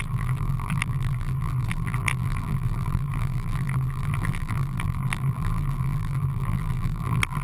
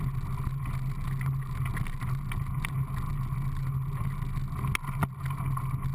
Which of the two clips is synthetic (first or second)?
first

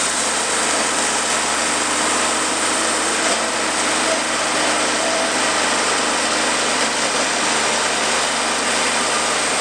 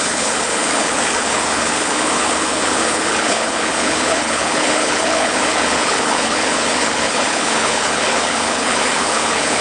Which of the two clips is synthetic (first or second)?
second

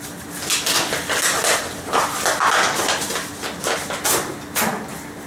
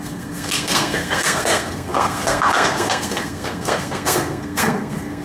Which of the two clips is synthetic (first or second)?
second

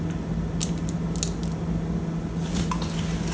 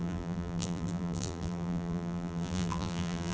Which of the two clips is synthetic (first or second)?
second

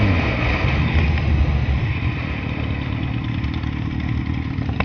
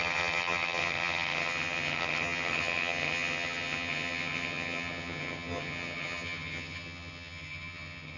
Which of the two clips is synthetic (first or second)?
second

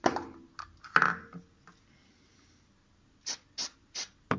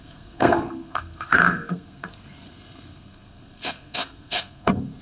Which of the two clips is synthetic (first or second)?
second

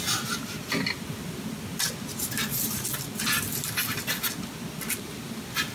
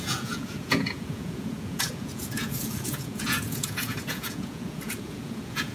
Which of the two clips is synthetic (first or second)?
second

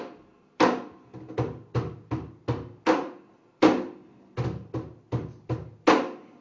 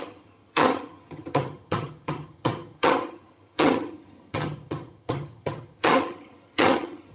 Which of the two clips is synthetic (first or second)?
second